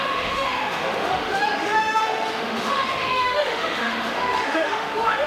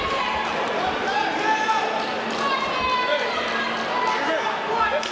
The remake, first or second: first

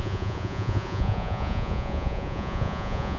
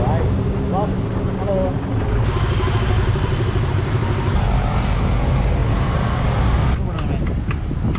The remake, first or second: first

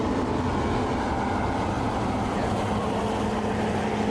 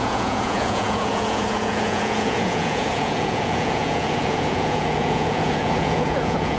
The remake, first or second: second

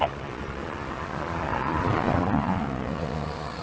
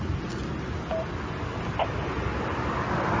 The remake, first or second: first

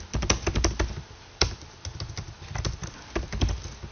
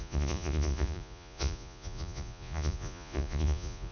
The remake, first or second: second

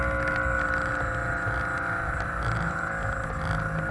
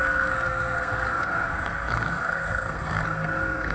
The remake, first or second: second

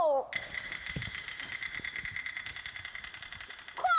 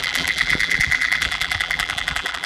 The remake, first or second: second